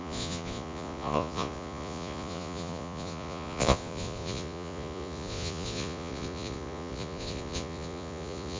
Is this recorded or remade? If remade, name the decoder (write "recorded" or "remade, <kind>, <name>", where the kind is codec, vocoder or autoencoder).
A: remade, vocoder, Vocos